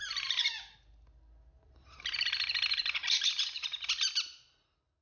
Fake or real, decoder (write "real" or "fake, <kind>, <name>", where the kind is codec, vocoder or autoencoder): real